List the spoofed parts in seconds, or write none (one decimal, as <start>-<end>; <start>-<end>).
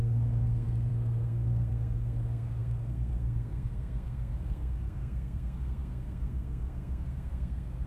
0.0-7.9